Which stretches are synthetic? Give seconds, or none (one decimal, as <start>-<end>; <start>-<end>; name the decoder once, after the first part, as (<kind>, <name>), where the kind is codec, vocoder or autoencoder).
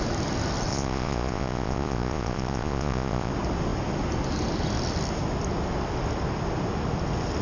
0.7-3.3 (vocoder, Vocos)